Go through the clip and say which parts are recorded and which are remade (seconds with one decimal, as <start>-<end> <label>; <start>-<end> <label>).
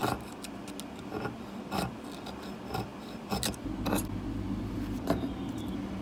0.0-6.0 recorded